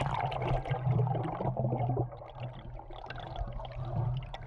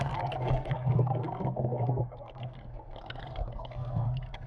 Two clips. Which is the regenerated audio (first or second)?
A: second